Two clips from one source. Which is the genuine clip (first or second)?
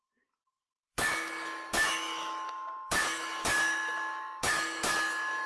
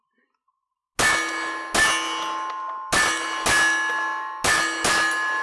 second